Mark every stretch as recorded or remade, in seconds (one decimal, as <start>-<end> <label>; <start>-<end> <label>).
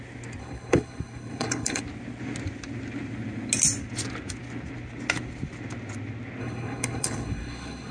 0.0-0.4 recorded; 0.4-1.8 remade; 1.8-6.4 recorded; 6.4-7.9 remade